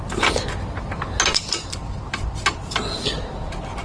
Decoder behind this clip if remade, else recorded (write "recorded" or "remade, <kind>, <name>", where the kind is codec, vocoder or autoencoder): recorded